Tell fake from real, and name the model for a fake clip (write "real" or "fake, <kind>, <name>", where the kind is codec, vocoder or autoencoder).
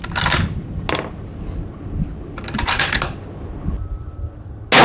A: real